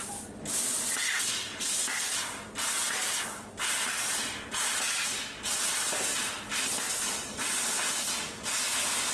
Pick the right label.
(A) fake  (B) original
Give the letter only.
B